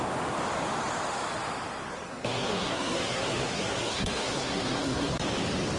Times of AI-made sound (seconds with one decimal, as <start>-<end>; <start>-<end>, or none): 1.9-5.1